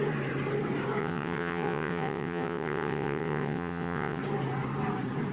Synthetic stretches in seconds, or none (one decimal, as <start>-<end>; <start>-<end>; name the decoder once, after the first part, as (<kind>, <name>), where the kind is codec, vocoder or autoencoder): 1.0-4.2 (vocoder, WaveNeXt)